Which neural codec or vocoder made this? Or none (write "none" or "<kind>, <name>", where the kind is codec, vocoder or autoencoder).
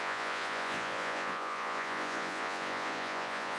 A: vocoder, Vocos